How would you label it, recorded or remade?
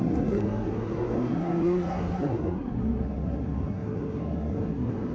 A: remade